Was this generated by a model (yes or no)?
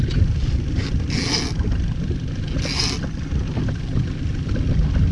no